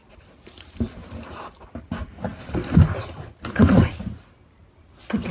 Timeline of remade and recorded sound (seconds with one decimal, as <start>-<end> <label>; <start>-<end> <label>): 0.0-5.3 recorded